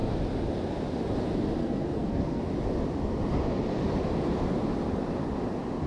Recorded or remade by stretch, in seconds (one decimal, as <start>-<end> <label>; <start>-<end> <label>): 0.0-1.6 recorded; 1.6-2.4 remade; 2.4-5.9 recorded